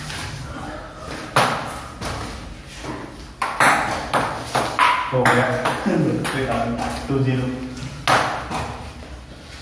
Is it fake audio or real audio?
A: real